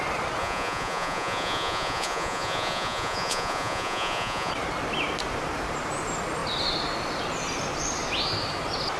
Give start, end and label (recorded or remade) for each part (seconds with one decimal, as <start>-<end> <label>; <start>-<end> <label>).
0.0-0.4 recorded; 0.4-4.5 remade; 4.5-9.0 recorded